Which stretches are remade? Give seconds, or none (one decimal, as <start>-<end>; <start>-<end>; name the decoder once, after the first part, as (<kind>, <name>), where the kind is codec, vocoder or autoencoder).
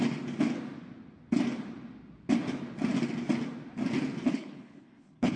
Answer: 4.3-5.4 (codec, HILCodec)